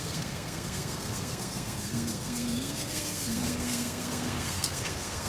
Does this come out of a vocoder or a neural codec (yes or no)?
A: yes